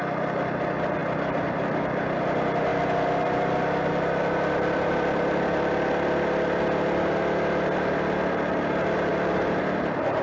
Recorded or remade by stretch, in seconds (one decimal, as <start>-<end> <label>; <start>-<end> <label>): 0.0-9.1 recorded; 9.1-10.2 remade